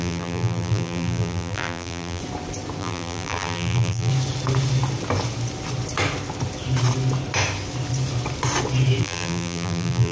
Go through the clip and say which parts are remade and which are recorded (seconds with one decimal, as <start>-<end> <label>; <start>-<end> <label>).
0.0-2.2 remade; 2.2-2.8 recorded; 2.8-4.1 remade; 4.1-9.0 recorded; 9.0-10.1 remade